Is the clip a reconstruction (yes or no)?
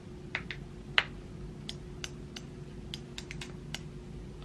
no